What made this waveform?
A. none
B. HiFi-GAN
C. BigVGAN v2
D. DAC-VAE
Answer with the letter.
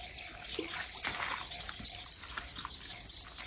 A